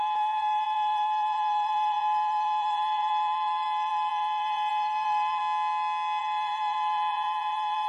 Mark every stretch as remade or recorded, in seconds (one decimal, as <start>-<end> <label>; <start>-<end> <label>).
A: 0.0-5.4 remade; 5.4-6.2 recorded; 6.2-7.9 remade